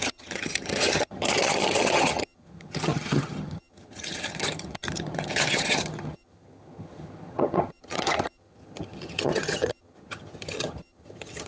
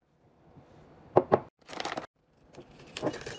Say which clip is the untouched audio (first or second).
second